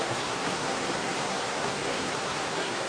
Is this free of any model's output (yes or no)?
no